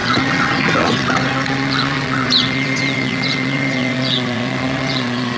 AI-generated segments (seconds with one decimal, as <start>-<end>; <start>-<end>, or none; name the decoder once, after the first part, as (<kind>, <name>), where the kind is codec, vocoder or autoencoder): 0.0-5.4 (vocoder, WaveNeXt)